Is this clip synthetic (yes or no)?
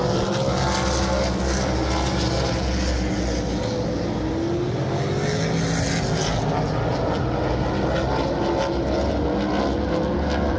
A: no